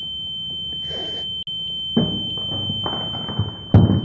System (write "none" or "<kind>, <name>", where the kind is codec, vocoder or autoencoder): none